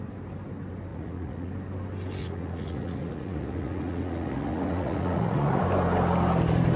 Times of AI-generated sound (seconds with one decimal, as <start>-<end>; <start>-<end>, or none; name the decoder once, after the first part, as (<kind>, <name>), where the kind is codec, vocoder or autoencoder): 0.9-1.5 (vocoder, Vocos); 2.2-5.6